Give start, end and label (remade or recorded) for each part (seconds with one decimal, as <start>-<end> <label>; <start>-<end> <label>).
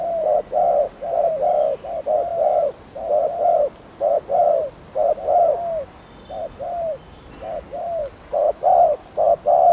0.0-9.7 recorded